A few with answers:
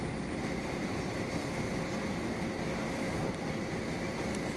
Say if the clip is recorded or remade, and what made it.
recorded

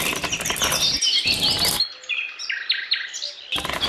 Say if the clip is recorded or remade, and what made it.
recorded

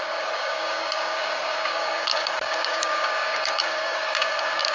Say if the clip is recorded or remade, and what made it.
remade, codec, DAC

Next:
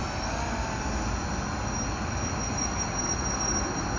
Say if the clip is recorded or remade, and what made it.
recorded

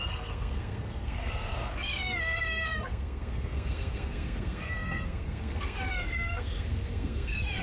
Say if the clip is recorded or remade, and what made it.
remade, codec, SNAC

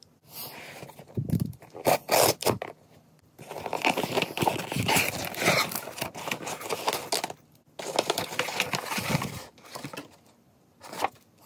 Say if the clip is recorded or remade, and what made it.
recorded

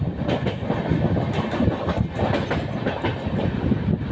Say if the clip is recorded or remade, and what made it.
recorded